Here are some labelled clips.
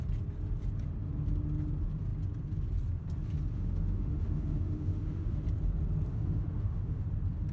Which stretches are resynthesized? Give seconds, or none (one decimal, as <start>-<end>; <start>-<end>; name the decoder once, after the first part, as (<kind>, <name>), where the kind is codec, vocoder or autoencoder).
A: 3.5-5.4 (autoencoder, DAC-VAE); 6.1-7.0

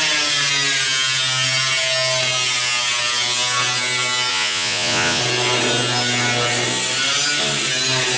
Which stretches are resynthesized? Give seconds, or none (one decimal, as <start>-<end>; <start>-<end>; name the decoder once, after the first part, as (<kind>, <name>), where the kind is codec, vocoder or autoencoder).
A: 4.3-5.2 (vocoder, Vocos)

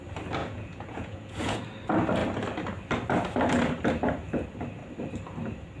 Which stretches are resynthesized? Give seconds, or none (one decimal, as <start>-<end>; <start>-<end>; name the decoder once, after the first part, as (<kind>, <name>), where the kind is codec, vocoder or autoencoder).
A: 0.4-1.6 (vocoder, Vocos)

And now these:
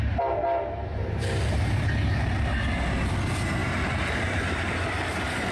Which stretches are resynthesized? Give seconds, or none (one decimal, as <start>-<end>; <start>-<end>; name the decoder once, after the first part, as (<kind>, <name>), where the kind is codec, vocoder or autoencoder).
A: 0.9-2.6 (vocoder, BigVGAN v2); 3.6-5.5

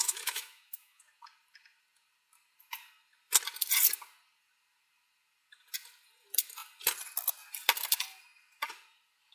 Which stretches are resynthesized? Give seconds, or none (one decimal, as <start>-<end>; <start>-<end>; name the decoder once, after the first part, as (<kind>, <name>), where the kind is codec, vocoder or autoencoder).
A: 0.0-1.0 (autoencoder, DAC-VAE)